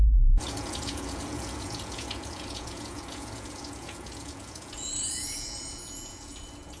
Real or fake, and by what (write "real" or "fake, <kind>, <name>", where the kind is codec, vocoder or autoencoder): fake, vocoder, Vocos